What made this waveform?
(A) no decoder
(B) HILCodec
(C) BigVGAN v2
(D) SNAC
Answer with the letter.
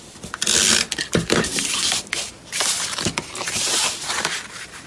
A